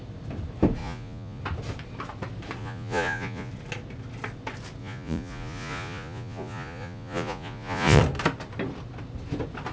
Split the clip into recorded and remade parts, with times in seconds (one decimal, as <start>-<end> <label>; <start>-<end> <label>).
0.0-0.8 recorded; 0.8-1.4 remade; 1.4-2.6 recorded; 2.6-3.5 remade; 3.5-4.8 recorded; 4.8-8.0 remade; 8.0-9.7 recorded